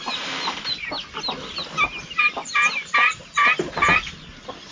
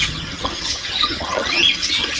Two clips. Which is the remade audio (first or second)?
second